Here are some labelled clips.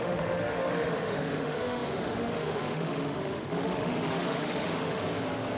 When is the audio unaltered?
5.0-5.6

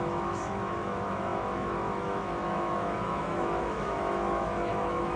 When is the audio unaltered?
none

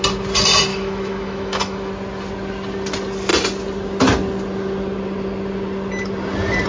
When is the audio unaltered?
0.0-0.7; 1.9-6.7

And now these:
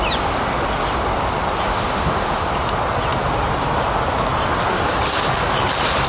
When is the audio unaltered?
0.0-1.7; 2.5-6.1

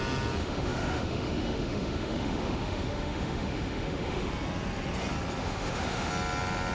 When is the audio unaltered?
0.0-0.4; 4.3-5.4; 6.1-6.7

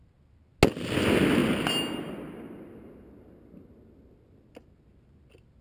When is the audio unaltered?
0.0-5.6

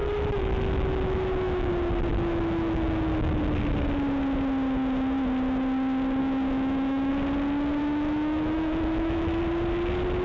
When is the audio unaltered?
1.7-2.1; 3.5-6.2; 7.1-7.8; 9.4-10.2